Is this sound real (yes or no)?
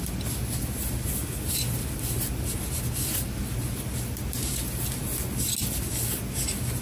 yes